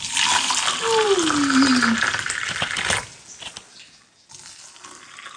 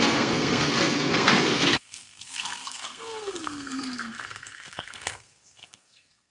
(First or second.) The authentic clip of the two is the first